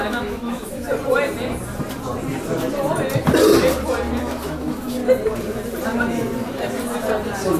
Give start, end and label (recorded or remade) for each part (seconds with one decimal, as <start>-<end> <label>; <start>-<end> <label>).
0.0-0.9 remade; 0.9-4.2 recorded; 4.2-5.0 remade; 5.0-7.6 recorded